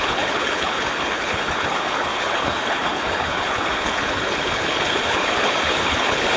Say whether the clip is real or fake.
fake